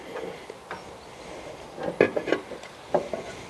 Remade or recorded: recorded